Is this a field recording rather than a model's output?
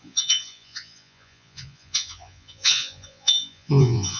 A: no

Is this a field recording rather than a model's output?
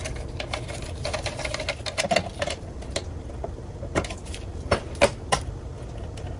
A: yes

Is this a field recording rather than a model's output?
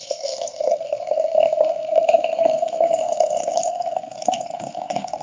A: no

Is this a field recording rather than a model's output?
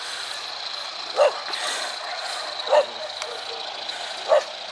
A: yes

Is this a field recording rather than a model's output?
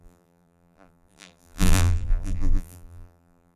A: no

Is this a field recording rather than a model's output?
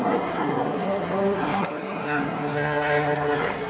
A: no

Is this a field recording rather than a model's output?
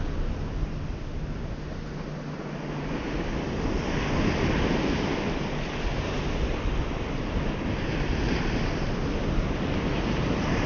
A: yes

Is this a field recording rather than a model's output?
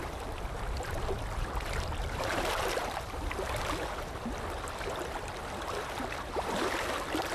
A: no